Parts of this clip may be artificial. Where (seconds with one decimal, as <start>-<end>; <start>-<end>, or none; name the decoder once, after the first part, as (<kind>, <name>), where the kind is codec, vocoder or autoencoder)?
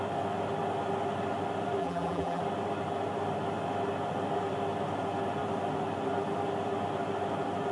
1.8-2.4 (vocoder, BigVGAN v2)